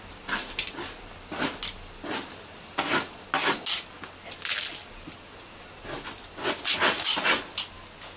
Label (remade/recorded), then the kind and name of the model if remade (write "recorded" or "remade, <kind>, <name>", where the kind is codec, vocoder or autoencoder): recorded